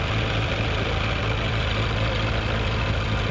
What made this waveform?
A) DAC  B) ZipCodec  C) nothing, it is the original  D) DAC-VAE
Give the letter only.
C